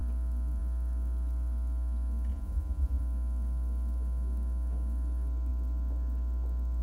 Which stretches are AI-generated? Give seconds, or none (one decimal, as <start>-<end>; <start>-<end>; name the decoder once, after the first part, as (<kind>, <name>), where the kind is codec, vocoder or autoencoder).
2.3-3.0 (vocoder, Vocos)